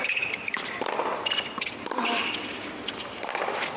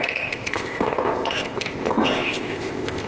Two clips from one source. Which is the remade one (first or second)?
second